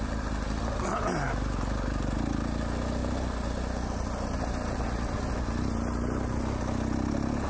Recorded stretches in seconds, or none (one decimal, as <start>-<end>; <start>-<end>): 0.0-7.5